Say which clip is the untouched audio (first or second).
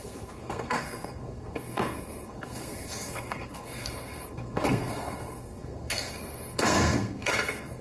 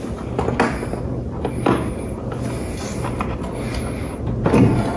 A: second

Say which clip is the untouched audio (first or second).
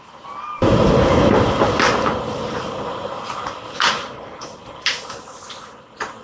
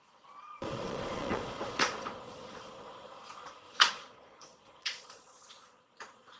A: first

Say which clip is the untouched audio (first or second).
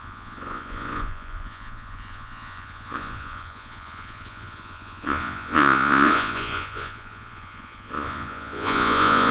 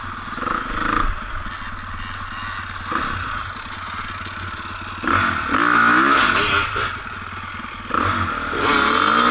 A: second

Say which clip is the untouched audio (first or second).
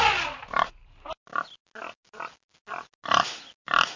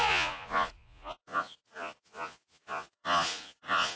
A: first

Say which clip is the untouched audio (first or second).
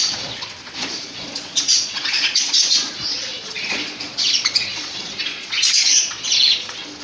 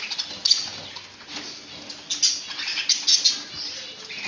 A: second